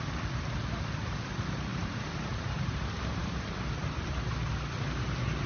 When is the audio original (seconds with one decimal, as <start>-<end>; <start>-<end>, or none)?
0.0-1.7; 3.4-3.8; 4.5-5.5